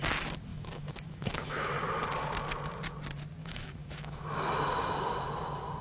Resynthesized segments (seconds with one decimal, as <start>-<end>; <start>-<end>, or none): 0.5-1.7; 3.4-4.5